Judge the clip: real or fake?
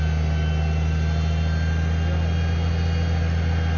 real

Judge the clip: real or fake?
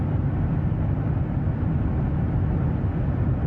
real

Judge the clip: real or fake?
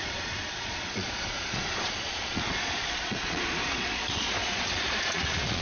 fake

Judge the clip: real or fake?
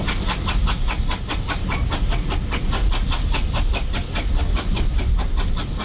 real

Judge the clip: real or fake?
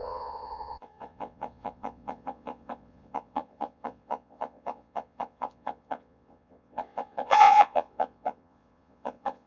fake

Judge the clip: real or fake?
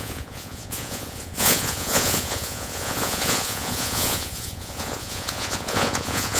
fake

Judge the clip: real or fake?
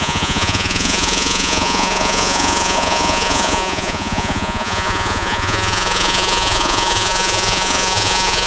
fake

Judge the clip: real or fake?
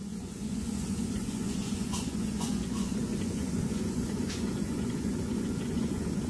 fake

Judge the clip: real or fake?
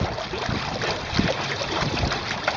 real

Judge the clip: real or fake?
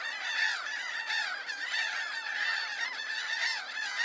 fake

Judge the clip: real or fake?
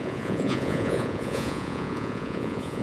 fake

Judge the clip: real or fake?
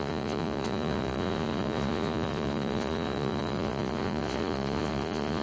fake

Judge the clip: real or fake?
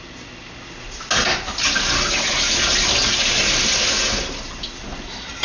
real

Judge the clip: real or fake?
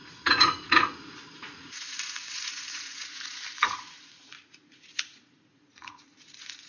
fake